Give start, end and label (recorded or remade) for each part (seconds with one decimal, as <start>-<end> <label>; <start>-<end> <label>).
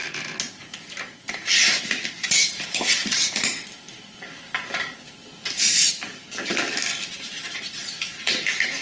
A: 0.0-8.8 recorded